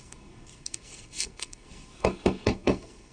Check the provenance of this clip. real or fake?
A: fake